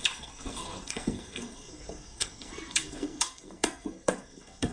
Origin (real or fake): fake